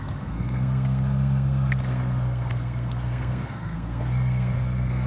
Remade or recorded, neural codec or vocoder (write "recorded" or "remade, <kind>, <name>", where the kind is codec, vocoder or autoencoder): remade, codec, SNAC